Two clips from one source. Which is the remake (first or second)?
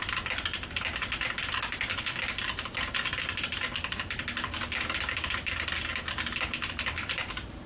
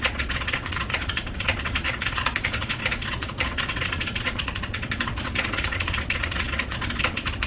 second